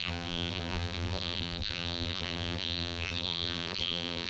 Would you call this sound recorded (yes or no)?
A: no